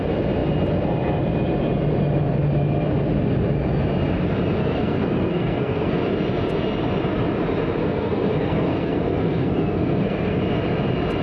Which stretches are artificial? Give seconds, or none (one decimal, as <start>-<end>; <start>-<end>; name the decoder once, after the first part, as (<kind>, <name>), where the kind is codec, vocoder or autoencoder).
4.6-5.9 (codec, SNAC); 7.8-10.4